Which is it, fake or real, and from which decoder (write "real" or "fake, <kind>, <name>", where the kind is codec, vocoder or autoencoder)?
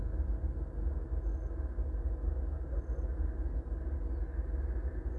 real